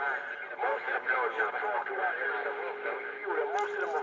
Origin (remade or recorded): recorded